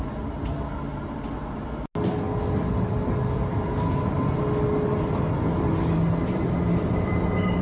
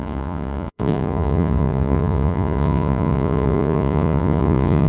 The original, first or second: first